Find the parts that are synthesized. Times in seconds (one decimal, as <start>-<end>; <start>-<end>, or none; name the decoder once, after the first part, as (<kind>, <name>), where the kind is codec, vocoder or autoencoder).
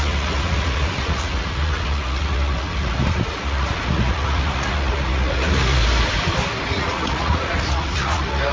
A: 0.0-5.8 (vocoder, Vocos); 6.7-8.5